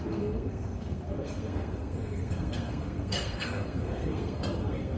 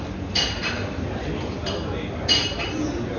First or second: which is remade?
first